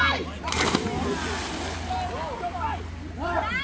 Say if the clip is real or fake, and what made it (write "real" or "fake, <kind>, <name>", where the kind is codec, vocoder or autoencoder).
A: real